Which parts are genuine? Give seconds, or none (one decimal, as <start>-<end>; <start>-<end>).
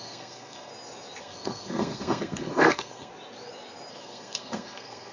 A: 0.7-1.2; 3.1-3.9